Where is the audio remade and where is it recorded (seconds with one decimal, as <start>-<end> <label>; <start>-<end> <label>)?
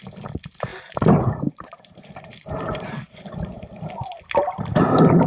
0.0-0.7 recorded; 0.7-3.9 remade; 3.9-5.3 recorded